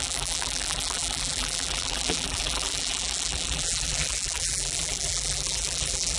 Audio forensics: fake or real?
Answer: fake